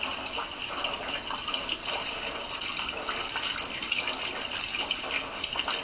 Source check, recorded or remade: recorded